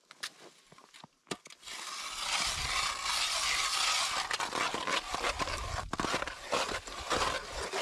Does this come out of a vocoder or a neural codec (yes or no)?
no